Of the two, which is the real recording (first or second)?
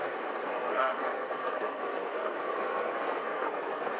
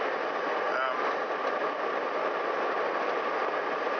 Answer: second